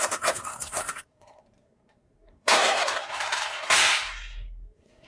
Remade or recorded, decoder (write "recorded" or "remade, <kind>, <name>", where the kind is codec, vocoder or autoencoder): remade, codec, SNAC